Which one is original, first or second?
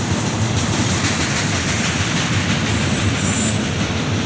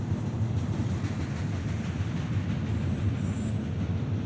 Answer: second